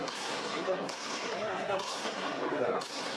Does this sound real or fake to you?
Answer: fake